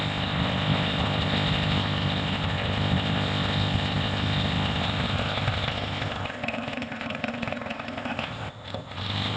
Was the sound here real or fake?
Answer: fake